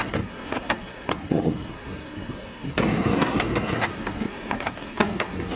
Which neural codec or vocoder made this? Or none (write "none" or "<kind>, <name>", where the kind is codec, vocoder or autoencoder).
codec, SNAC